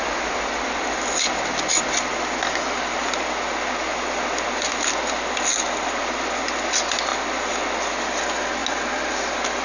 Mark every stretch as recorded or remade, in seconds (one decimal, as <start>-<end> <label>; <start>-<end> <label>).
0.0-9.6 recorded